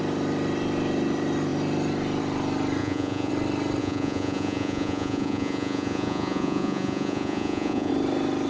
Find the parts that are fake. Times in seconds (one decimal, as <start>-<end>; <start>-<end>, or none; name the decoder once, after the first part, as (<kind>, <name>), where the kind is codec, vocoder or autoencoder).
2.8-3.3 (vocoder, Vocos); 3.8-7.9